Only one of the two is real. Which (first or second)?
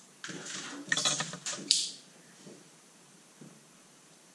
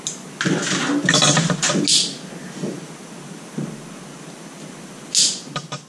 second